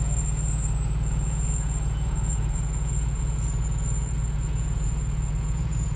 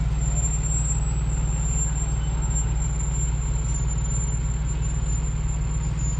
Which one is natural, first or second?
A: second